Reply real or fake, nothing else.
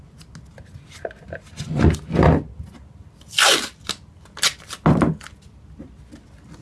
real